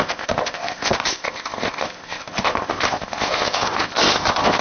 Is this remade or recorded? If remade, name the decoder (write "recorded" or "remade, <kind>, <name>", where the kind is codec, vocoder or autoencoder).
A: remade, codec, ZipCodec